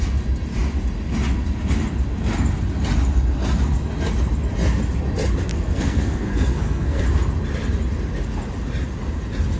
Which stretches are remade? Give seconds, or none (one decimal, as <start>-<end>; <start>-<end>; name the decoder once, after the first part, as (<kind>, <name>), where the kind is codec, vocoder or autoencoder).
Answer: 5.5-7.0 (codec, SNAC)